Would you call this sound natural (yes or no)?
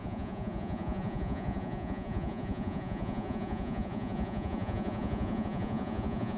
no